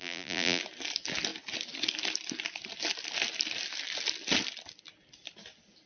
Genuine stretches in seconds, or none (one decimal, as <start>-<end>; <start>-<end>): 0.6-5.9